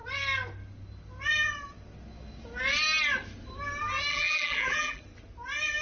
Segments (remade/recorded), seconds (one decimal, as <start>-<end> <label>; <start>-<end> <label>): 0.0-4.1 recorded; 4.1-5.0 remade; 5.0-5.8 recorded